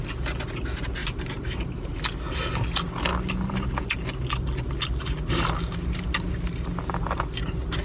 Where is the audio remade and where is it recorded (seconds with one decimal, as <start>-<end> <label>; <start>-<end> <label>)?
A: 0.0-1.0 recorded; 1.0-1.9 remade; 1.9-7.8 recorded